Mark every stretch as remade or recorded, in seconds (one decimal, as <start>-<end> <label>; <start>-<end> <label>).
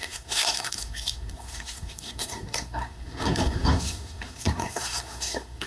0.0-5.7 remade